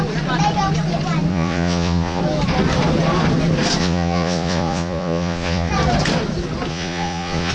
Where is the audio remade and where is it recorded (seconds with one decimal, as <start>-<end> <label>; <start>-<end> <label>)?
0.0-1.3 recorded; 1.3-2.2 remade; 2.2-3.8 recorded; 3.8-5.7 remade; 5.7-6.7 recorded; 6.7-7.5 remade